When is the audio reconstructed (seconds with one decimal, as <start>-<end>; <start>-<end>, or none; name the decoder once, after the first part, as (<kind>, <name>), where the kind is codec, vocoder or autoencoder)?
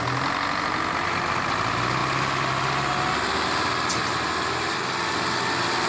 none